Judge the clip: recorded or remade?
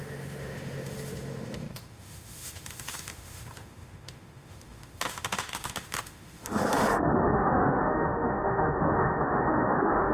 remade